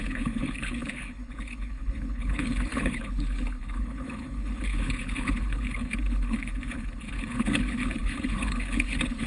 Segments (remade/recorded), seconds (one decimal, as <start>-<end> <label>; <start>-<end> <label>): 0.0-9.3 remade